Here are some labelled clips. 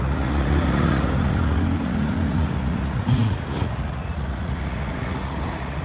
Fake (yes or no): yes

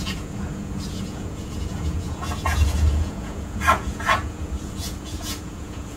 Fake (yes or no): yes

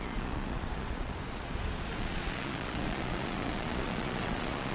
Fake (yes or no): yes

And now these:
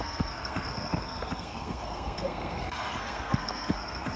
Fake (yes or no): yes